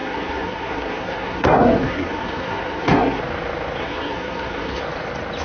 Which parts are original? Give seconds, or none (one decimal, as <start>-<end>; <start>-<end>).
3.2-3.8; 4.8-5.4

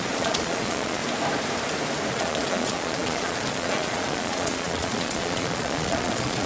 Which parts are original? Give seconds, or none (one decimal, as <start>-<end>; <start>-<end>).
1.0-2.1

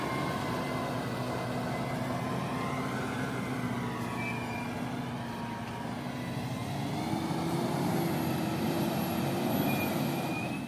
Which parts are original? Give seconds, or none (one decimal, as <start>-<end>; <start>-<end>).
0.0-10.7

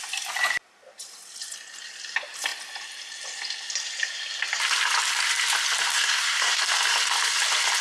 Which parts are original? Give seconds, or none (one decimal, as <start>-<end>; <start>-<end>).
0.0-5.9; 6.6-7.8

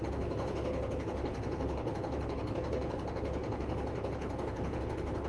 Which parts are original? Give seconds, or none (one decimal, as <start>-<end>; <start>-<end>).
none

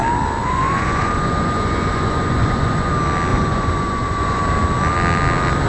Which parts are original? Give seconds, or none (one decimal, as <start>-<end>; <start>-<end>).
0.0-0.4; 2.9-3.3; 4.4-5.7

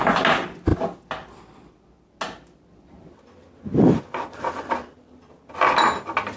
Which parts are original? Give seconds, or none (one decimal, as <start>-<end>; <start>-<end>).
0.0-6.4